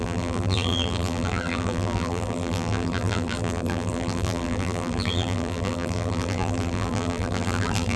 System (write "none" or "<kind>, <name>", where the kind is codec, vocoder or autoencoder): vocoder, BigVGAN v2